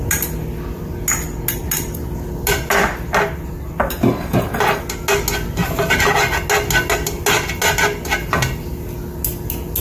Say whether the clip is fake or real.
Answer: real